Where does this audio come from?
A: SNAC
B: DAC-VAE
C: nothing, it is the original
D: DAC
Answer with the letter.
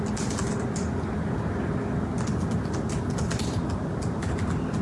C